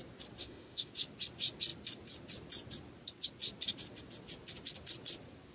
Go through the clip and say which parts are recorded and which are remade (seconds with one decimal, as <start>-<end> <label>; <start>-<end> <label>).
0.0-0.4 recorded; 0.4-0.9 remade; 0.9-5.5 recorded